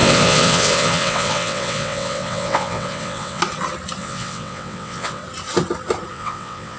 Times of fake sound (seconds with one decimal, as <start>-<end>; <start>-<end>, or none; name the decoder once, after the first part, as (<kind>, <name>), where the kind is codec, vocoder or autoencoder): 0.0-3.4 (vocoder, WaveNeXt); 4.0-5.2; 6.1-6.8